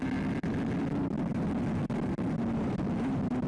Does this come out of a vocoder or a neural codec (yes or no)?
no